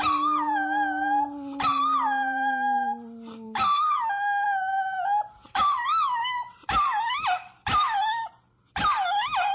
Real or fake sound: real